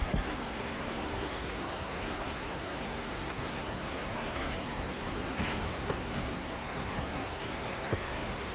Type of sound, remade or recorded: remade